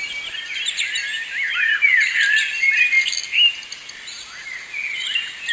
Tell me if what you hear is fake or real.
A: real